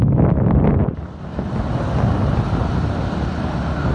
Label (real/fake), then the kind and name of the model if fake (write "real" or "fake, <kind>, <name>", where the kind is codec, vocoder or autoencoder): real